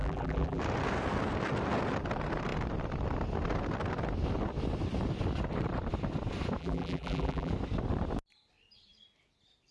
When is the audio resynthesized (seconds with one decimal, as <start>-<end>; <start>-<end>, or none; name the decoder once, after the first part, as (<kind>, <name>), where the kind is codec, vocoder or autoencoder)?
0.0-0.6 (vocoder, BigVGAN v2); 6.6-7.5